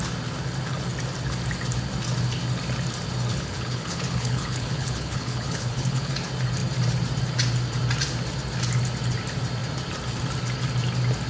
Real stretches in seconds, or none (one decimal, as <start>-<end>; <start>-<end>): 0.0-3.3; 6.1-11.3